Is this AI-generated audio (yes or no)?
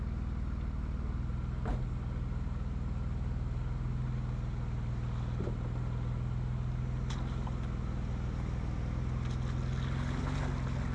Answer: no